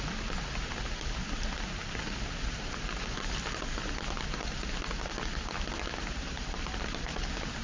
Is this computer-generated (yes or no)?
no